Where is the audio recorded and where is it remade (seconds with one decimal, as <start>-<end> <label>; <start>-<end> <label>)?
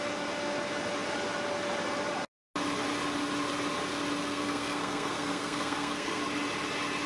0.0-4.2 recorded; 4.2-6.2 remade; 6.2-7.1 recorded